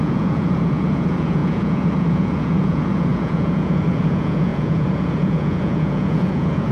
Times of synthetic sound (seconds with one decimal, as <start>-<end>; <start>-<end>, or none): 0.0-6.7